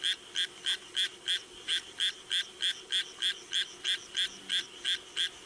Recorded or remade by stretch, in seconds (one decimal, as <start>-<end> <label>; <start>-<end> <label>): 0.0-5.5 recorded

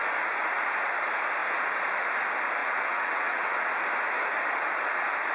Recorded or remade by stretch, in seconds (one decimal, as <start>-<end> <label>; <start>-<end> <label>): 0.0-2.6 recorded; 2.6-3.7 remade; 3.7-5.3 recorded

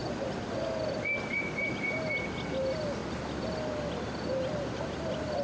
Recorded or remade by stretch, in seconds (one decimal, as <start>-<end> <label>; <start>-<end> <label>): 0.0-5.4 recorded

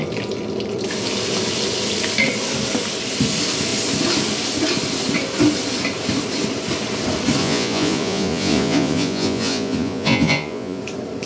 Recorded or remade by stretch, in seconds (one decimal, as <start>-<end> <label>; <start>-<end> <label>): 0.0-7.4 recorded; 7.4-10.8 remade; 10.8-11.3 recorded